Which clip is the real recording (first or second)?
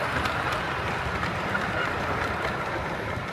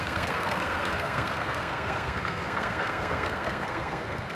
first